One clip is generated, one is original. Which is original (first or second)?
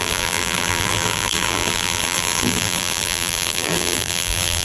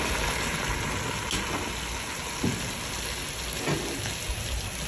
second